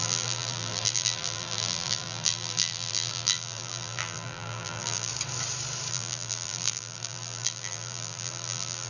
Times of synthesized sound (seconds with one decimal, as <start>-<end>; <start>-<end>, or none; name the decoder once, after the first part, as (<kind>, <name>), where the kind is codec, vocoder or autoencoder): 0.0-5.1 (vocoder, BigVGAN v2); 5.9-8.9